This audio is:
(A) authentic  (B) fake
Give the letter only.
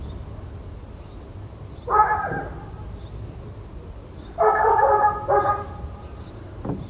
A